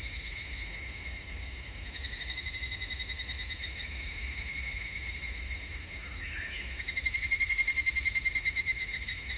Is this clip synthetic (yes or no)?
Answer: yes